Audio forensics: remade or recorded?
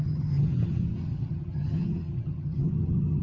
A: remade